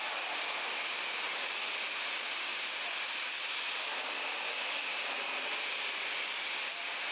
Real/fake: real